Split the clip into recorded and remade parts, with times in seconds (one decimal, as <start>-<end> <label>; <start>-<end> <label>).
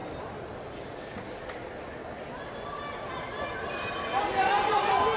0.0-2.3 remade; 2.3-3.6 recorded; 3.6-4.5 remade; 4.5-5.2 recorded